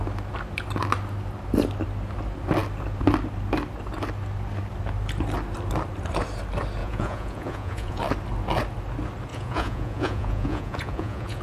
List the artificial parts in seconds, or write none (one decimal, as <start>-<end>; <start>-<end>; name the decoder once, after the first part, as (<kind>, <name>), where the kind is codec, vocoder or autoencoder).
6.8-8.0 (vocoder, Vocos); 9.3-11.4